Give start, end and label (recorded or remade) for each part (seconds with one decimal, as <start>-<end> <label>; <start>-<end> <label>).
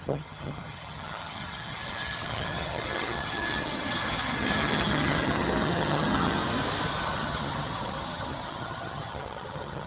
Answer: 0.0-6.4 remade; 6.4-7.0 recorded; 7.0-9.9 remade